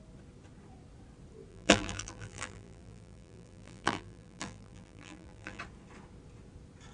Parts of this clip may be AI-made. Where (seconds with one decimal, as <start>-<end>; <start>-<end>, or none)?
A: 1.5-5.6